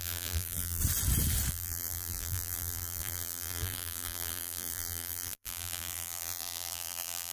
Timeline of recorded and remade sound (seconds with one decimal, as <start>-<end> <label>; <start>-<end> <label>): 0.0-0.8 remade; 0.8-1.5 recorded; 1.5-7.3 remade